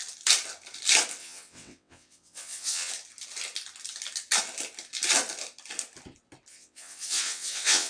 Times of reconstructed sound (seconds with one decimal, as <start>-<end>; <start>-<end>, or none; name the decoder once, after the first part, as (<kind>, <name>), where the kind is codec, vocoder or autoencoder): 1.2-2.9 (vocoder, WaveNeXt); 6.5-7.9